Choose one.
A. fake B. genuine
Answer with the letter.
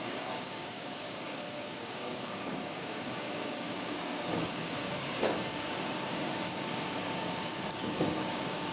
A